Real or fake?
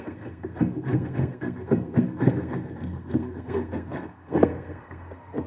fake